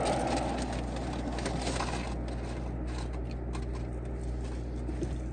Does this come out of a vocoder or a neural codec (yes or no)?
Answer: no